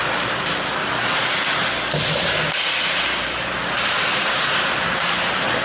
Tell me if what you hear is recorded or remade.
recorded